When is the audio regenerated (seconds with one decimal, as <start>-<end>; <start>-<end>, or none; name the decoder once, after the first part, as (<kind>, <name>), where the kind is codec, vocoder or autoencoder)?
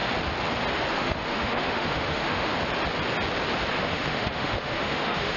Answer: 0.9-2.5 (autoencoder, DAC-VAE); 3.7-5.4